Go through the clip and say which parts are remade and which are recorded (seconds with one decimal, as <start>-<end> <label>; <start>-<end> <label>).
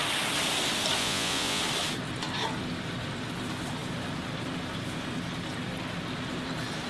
0.0-1.0 recorded; 1.0-1.6 remade; 1.6-6.9 recorded